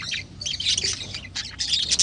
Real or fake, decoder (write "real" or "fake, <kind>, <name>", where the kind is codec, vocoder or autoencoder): real